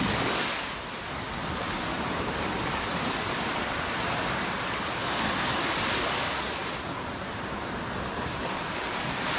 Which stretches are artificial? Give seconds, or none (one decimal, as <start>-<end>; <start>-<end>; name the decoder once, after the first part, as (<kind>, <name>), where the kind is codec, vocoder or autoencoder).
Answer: 1.9-4.9 (vocoder, BigVGAN v2); 6.6-9.0

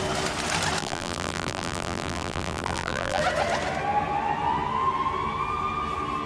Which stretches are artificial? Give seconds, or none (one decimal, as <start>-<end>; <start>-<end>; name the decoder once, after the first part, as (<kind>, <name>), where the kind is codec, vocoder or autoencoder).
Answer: 0.8-3.2 (vocoder, BigVGAN v2)

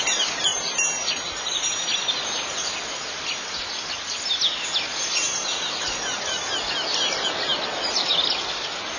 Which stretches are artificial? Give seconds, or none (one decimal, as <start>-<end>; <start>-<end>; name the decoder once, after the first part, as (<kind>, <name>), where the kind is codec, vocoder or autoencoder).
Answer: 0.5-2.6 (vocoder, BigVGAN v2); 7.5-8.3

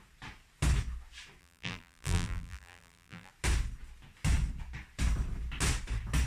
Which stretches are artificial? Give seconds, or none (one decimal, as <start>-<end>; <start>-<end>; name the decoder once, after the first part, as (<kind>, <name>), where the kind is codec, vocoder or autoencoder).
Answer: 1.4-3.3 (vocoder, BigVGAN v2)

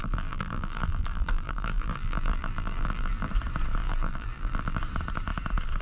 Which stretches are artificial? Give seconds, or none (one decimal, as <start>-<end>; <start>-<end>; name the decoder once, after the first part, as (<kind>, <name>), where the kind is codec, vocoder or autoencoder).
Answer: 0.0-3.3 (vocoder, BigVGAN v2); 3.8-4.8

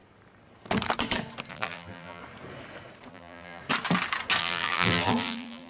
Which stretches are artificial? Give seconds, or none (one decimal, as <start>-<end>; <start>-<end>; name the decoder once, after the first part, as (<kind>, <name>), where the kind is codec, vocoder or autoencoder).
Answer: 1.5-2.2 (vocoder, BigVGAN v2); 3.1-3.6; 4.4-5.7

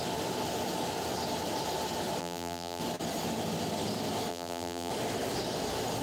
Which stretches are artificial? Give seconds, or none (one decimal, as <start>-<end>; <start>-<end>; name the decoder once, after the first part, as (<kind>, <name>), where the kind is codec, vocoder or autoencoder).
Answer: 2.2-2.8 (vocoder, BigVGAN v2); 4.3-4.9